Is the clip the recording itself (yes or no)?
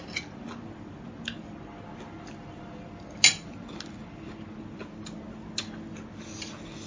yes